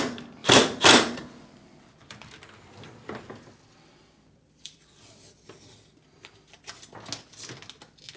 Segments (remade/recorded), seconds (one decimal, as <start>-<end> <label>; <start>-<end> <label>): 0.0-0.4 recorded; 0.4-5.3 remade; 5.3-8.2 recorded